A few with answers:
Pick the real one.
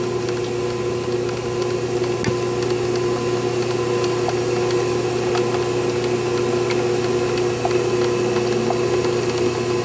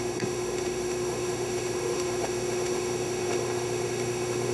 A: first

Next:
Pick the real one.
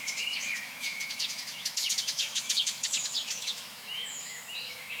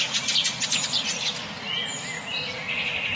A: second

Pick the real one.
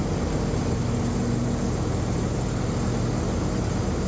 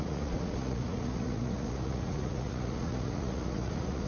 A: first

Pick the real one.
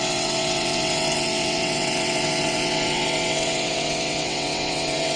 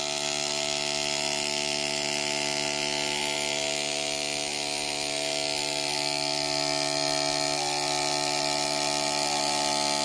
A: second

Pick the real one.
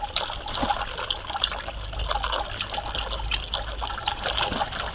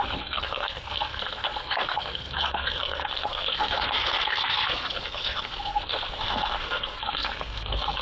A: first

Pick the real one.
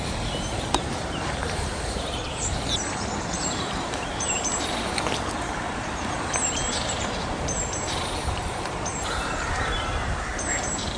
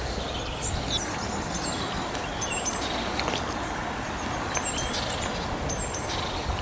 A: second